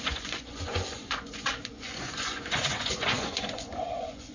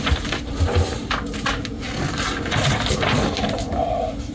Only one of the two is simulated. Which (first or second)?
first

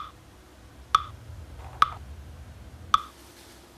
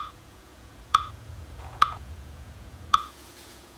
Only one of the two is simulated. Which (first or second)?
second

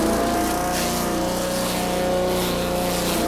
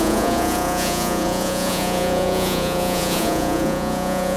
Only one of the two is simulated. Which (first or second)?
second